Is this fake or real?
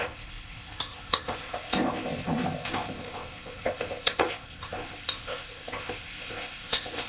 fake